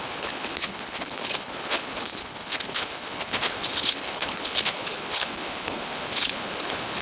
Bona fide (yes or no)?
no